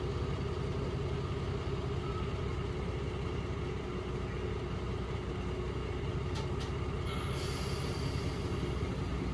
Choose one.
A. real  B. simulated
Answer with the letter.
A